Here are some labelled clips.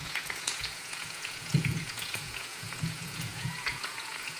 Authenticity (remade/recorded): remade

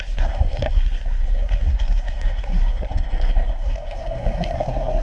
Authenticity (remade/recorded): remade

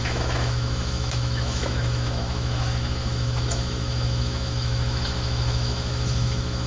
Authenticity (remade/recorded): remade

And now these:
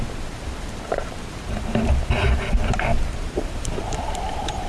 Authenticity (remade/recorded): remade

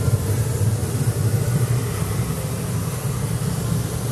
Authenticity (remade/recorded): recorded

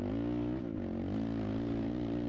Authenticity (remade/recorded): recorded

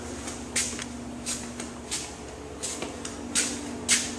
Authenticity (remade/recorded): recorded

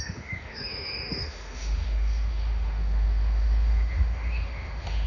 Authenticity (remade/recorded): remade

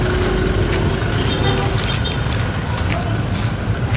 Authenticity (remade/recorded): recorded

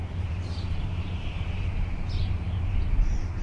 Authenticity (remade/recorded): remade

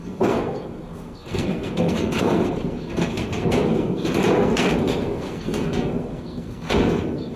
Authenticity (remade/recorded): remade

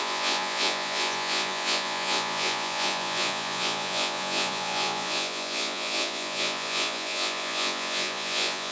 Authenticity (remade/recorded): remade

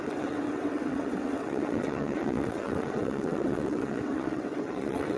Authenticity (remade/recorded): remade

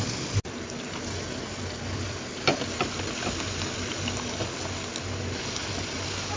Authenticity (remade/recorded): recorded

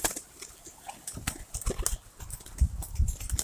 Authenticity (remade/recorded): recorded